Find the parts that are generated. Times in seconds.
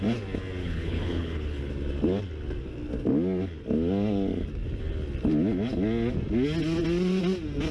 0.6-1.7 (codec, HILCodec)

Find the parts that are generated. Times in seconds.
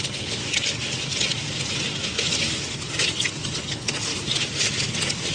0.0-0.4 (codec, HILCodec); 3.6-4.1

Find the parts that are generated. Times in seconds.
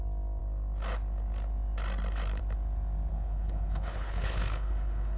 3.1-5.2 (codec, HILCodec)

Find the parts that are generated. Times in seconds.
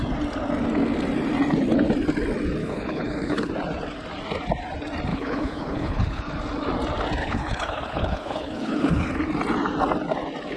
2.6-3.5 (codec, HILCodec); 5.1-6.2; 7.2-9.1